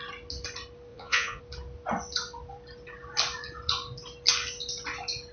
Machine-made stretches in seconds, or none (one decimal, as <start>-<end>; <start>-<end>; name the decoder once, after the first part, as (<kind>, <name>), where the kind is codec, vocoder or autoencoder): 0.9-1.4 (vocoder, Vocos)